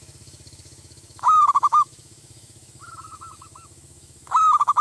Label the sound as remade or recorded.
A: remade